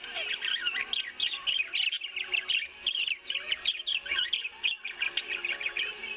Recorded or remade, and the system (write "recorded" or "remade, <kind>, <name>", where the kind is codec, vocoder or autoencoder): recorded